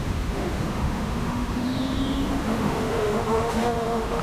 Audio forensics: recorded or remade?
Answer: remade